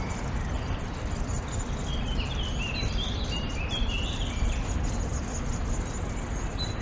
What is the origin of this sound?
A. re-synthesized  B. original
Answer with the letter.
B